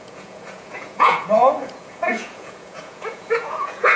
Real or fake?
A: fake